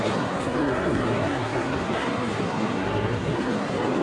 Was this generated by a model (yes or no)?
yes